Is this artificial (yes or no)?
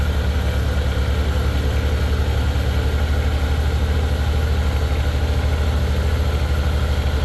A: no